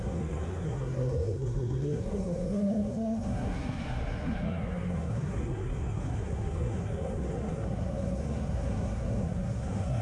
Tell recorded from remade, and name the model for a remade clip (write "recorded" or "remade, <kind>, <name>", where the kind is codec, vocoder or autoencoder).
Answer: remade, codec, SNAC